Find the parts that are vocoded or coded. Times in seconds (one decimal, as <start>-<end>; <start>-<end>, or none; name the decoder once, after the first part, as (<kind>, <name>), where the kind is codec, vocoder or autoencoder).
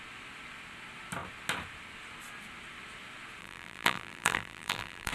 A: 3.4-5.1 (vocoder, BigVGAN v2)